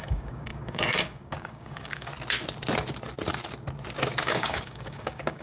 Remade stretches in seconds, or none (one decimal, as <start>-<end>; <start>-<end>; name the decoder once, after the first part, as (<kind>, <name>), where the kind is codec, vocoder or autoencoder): 0.0-2.1 (codec, DAC); 4.2-5.4